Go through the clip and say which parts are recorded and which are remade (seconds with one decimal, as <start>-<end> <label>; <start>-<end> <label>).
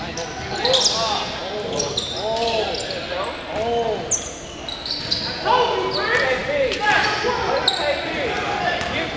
0.0-9.2 recorded